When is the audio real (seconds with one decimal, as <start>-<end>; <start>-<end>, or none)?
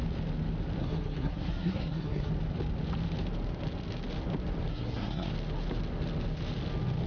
0.0-0.8; 2.3-4.7; 5.3-7.1